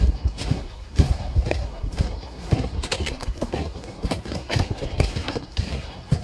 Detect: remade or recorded remade